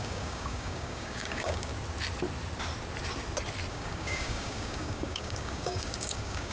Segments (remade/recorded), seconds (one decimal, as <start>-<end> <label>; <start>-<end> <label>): 0.0-1.7 remade; 1.7-3.7 recorded; 3.7-6.5 remade